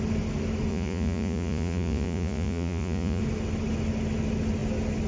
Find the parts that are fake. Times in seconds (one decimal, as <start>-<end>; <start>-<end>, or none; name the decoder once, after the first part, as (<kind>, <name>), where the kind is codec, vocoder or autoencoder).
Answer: 0.7-3.2 (vocoder, Vocos)